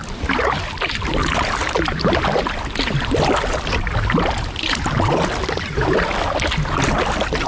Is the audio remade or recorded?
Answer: recorded